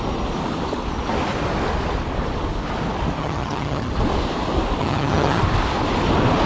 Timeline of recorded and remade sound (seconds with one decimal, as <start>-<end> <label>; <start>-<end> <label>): 0.0-3.2 recorded; 3.2-3.9 remade; 3.9-4.8 recorded; 4.8-5.4 remade; 5.4-6.5 recorded